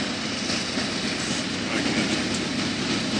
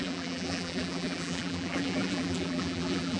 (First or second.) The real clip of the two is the first